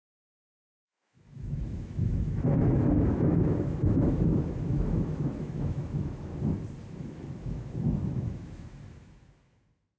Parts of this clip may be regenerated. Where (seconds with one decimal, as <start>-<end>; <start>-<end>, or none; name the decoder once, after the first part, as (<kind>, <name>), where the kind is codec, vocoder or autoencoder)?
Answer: 0.0-6.3 (autoencoder, DAC-VAE); 6.9-10.0